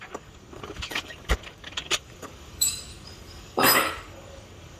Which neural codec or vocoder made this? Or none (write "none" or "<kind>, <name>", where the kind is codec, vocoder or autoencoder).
codec, DAC